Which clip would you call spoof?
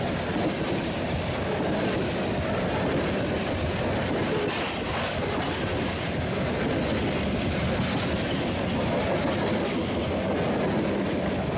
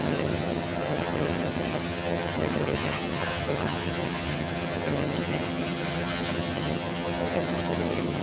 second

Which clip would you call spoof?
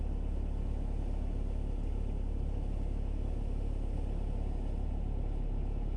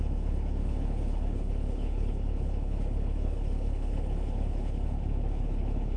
second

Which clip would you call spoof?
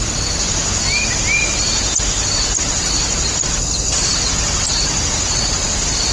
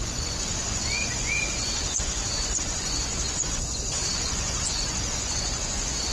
second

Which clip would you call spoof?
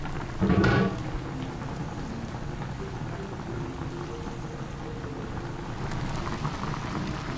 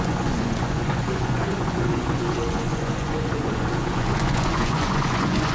second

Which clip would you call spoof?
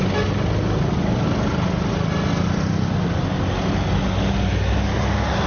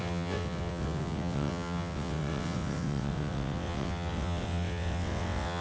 second